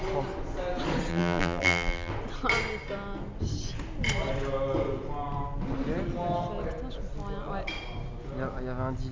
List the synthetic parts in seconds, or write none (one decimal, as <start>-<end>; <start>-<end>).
1.1-2.1